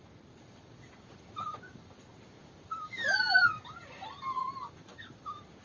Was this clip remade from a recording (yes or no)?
yes